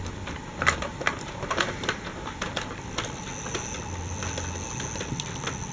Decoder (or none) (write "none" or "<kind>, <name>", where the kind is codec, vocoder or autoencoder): none